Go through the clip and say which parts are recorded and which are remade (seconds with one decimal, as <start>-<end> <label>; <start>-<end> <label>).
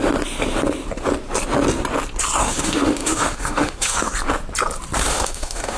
0.0-2.4 recorded; 2.4-4.1 remade; 4.1-5.1 recorded; 5.1-5.8 remade